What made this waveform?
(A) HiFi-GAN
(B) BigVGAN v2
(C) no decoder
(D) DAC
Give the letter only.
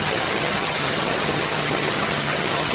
A